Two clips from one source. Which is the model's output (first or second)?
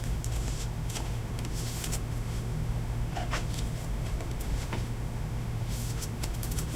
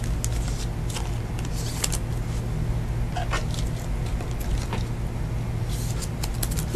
first